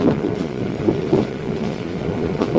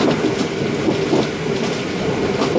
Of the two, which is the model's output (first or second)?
first